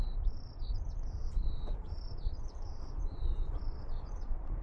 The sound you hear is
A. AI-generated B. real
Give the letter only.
A